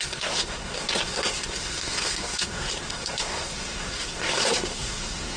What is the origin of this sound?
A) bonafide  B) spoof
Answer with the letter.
B